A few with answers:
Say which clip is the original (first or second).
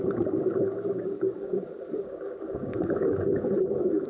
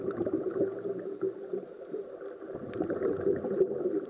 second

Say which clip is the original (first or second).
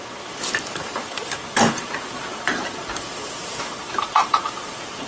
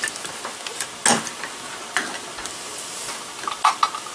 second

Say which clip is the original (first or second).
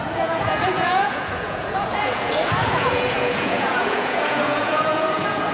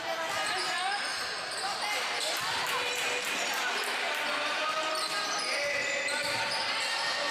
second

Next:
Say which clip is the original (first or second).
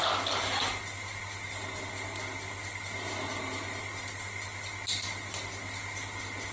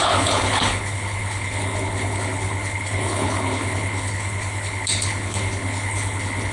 first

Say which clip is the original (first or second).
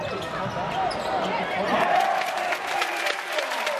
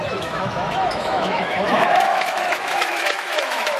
first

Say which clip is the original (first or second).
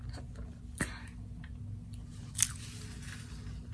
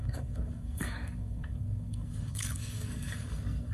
first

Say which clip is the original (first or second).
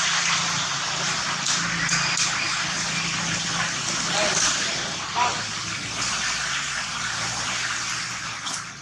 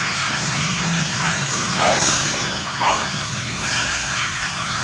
first